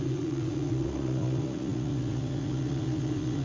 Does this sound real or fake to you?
fake